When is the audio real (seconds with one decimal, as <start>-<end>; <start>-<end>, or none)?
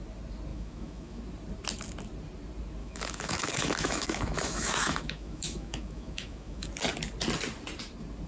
0.0-0.5; 1.2-2.8; 6.7-8.3